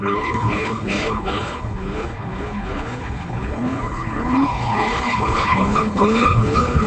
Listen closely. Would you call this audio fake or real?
fake